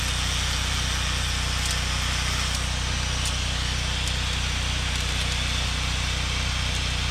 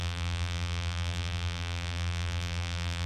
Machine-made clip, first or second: second